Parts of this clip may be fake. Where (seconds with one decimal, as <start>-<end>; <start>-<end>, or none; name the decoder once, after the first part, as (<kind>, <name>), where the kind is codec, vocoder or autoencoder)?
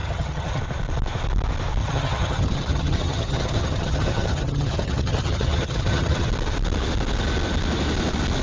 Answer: 0.0-0.6 (vocoder, HiFi-GAN); 1.8-6.3